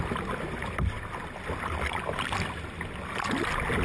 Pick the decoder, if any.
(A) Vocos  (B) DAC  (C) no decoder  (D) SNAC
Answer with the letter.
C